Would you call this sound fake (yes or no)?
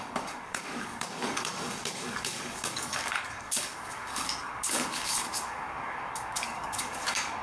yes